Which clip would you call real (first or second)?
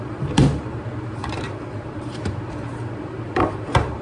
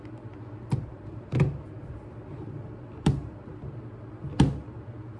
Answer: second